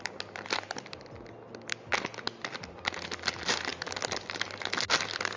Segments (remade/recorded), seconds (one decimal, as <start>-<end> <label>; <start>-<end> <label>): 0.0-5.4 recorded